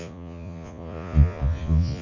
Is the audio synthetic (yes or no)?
yes